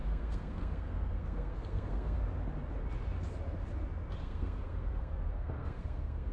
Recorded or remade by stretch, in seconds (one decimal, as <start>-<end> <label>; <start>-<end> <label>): 0.0-2.2 remade; 2.2-4.2 recorded; 4.2-6.3 remade